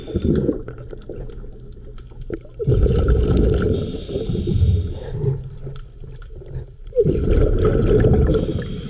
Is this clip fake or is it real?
real